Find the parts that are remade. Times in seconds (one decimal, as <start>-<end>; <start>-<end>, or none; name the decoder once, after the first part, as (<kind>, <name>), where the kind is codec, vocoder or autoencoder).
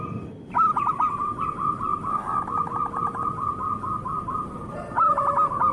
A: none